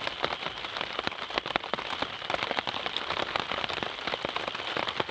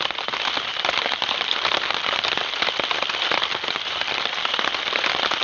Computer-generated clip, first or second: second